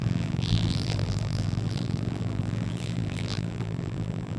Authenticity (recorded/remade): remade